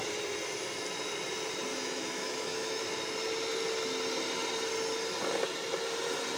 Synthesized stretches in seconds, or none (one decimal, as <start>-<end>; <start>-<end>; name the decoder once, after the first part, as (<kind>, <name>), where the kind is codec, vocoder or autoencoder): 1.7-2.8 (autoencoder, DAC-VAE)